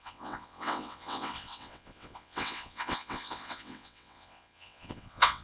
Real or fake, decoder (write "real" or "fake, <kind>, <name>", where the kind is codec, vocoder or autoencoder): fake, vocoder, WaveNeXt